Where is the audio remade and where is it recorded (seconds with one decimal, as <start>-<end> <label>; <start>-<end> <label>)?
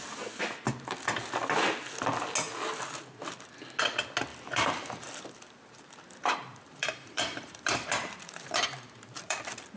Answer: 0.0-4.3 recorded; 4.3-9.4 remade; 9.4-9.8 recorded